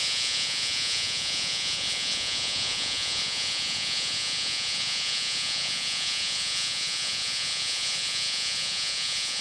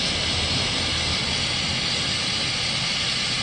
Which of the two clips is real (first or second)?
second